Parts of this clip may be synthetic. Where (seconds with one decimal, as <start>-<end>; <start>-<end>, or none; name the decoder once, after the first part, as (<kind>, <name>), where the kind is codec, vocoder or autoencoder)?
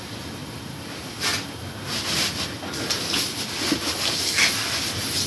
0.4-0.9 (vocoder, BigVGAN v2)